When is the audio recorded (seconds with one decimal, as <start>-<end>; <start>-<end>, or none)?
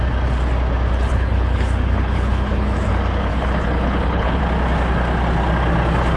0.0-1.1; 2.9-3.3; 4.4-6.2